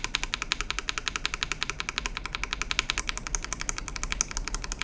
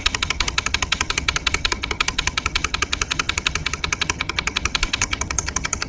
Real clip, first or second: first